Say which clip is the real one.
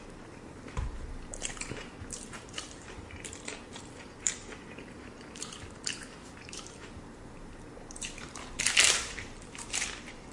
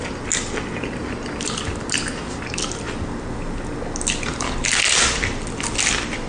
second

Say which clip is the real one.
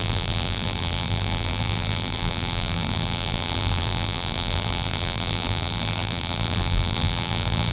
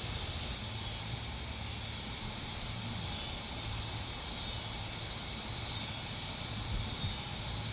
second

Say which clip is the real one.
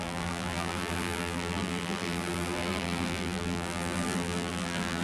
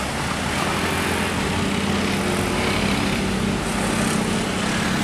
second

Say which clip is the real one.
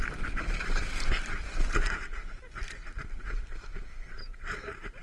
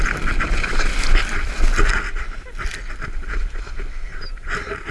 second